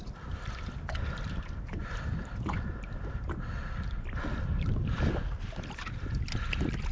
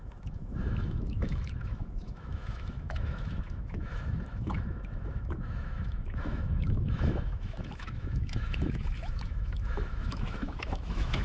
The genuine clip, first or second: first